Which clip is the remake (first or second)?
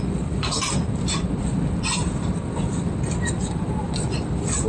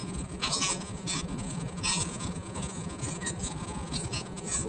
second